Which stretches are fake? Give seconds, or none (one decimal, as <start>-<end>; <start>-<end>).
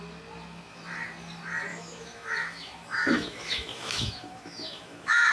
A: 1.7-5.3